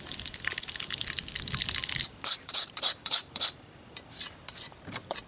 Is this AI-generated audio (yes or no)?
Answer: yes